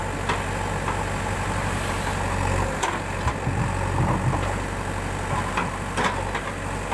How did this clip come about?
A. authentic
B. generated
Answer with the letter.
A